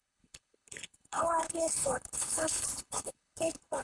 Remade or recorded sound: remade